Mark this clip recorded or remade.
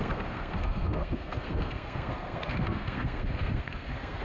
remade